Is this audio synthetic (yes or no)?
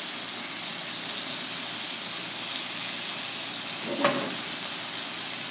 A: no